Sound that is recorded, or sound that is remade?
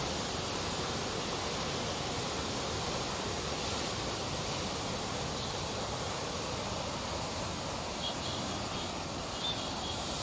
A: recorded